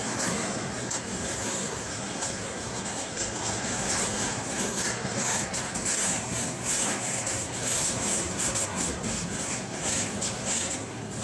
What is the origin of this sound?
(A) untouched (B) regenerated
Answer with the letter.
B